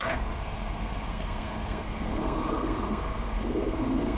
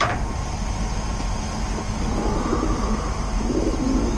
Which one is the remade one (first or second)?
first